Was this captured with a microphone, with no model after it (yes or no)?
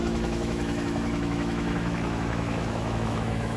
no